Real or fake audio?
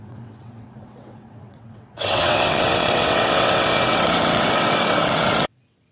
fake